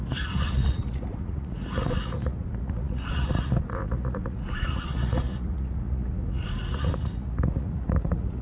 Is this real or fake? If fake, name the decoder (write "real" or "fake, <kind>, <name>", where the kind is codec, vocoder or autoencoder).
fake, vocoder, Vocos